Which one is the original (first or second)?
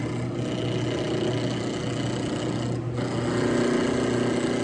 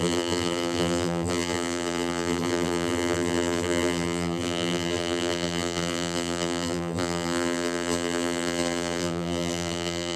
first